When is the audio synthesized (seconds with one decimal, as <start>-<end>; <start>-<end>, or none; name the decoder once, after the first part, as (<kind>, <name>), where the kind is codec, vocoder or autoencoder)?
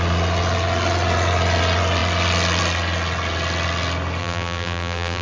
4.2-5.2 (vocoder, BigVGAN v2)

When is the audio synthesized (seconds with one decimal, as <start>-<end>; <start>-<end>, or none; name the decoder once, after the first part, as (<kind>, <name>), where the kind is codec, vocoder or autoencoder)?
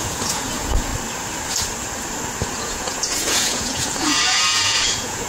0.0-0.9 (vocoder, Vocos); 2.6-5.3